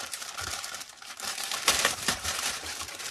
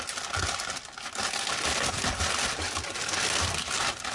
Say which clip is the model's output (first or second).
first